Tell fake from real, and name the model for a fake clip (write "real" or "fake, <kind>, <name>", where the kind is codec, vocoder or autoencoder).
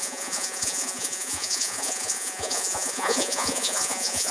fake, vocoder, Vocos